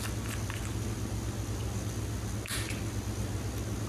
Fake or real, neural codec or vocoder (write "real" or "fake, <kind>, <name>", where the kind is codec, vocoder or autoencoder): real